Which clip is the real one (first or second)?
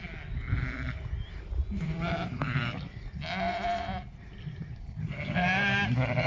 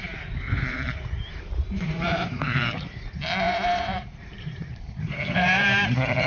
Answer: first